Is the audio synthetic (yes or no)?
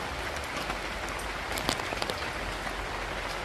no